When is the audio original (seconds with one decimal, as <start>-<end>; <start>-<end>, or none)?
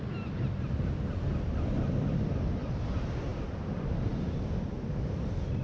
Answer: 0.0-3.3; 4.1-5.6